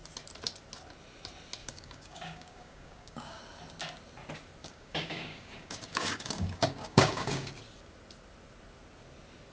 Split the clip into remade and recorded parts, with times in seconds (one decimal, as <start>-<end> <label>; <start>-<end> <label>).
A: 0.0-1.6 recorded; 1.6-3.4 remade; 3.4-4.6 recorded; 4.6-7.5 remade; 7.5-9.5 recorded